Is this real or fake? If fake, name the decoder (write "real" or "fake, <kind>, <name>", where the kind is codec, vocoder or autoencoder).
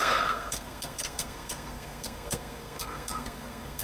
fake, codec, SNAC